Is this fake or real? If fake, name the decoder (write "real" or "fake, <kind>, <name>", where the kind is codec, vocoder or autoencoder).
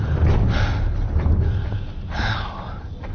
real